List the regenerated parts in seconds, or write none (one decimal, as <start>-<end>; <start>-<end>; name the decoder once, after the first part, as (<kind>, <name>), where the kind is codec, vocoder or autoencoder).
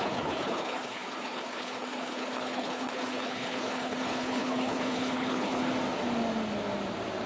0.0-5.6 (codec, HILCodec)